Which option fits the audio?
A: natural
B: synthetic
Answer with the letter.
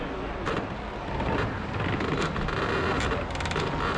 A